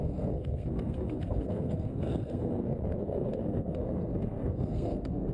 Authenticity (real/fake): fake